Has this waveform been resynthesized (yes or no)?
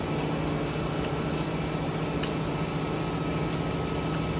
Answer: no